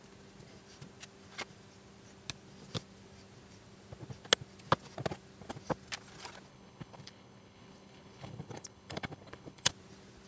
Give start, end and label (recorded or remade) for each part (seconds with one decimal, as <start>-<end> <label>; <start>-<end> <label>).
0.0-6.5 recorded; 6.5-9.7 remade; 9.7-10.3 recorded